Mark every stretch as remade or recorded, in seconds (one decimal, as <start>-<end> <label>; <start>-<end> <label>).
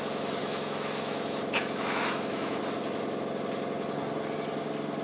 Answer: 0.0-0.4 recorded; 0.4-2.6 remade; 2.6-5.0 recorded